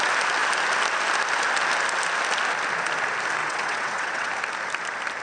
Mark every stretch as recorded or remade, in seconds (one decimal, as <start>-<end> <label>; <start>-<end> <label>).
0.0-3.4 recorded; 3.4-4.3 remade; 4.3-5.2 recorded